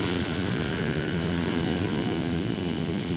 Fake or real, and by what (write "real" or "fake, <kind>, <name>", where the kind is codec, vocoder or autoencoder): fake, vocoder, Vocos